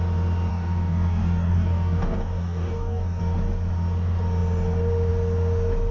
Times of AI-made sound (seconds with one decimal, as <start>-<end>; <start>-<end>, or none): 0.5-3.2